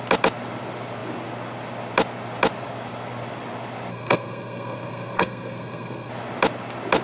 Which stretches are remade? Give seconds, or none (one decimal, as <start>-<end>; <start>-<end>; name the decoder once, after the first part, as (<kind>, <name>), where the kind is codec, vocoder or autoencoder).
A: 3.9-6.1 (codec, SNAC)